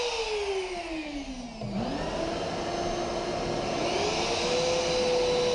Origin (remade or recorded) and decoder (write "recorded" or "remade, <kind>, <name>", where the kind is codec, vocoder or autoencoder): recorded